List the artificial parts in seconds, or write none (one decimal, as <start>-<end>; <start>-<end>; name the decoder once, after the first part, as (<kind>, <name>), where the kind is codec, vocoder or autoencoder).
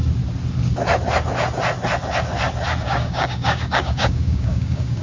2.8-5.0 (codec, DAC)